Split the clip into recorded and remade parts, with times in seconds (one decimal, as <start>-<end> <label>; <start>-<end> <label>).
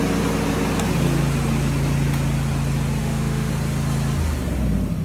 0.0-3.0 recorded; 3.0-3.5 remade; 3.5-5.0 recorded